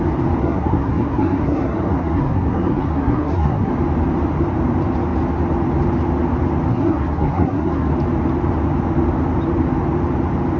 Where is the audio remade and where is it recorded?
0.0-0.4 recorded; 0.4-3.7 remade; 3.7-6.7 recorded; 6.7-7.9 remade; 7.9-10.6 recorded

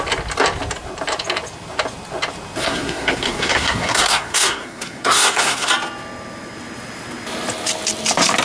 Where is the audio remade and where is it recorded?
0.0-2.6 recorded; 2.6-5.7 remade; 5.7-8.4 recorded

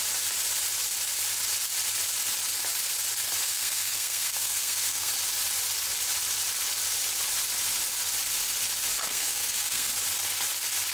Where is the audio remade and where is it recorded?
0.0-3.4 recorded; 3.4-5.1 remade; 5.1-9.0 recorded; 9.0-9.9 remade; 9.9-10.9 recorded

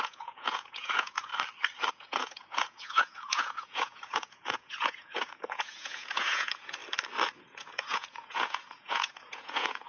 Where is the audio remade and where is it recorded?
0.0-1.3 remade; 1.3-1.9 recorded; 1.9-6.8 remade; 6.8-7.4 recorded; 7.4-9.9 remade

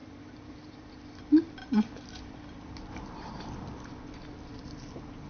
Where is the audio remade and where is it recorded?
0.0-1.1 remade; 1.1-1.6 recorded; 1.6-3.3 remade; 3.3-4.5 recorded; 4.5-5.3 remade

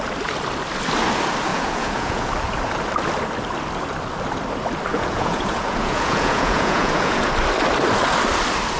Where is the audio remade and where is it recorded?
0.0-1.5 recorded; 1.5-2.3 remade; 2.3-4.9 recorded; 4.9-7.3 remade; 7.3-8.8 recorded